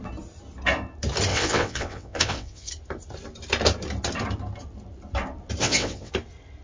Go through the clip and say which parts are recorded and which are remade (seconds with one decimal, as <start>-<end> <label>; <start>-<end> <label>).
0.0-1.3 recorded; 1.3-2.7 remade; 2.7-5.6 recorded; 5.6-6.1 remade; 6.1-6.6 recorded